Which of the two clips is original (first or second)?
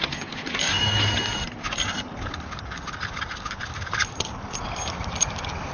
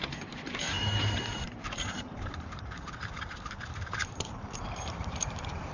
first